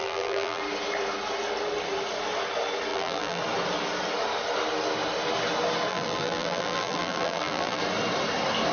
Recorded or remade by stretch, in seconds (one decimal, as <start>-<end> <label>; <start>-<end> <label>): 0.0-0.6 remade; 0.6-2.9 recorded; 2.9-3.4 remade; 3.4-5.9 recorded; 5.9-7.8 remade; 7.8-8.7 recorded